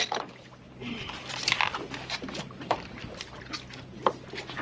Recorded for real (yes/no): yes